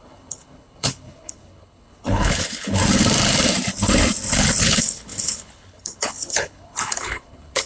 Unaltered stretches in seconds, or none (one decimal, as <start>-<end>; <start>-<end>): 2.8-4.6